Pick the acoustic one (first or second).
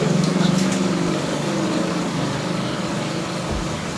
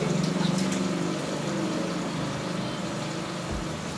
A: second